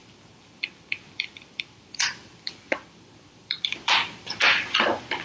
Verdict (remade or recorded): remade